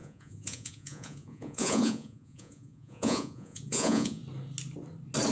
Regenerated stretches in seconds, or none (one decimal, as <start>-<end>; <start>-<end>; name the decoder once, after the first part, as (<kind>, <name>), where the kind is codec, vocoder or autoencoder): 0.0-4.2 (vocoder, Vocos)